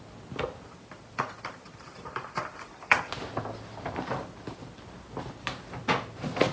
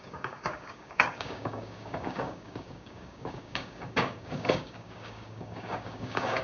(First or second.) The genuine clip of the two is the first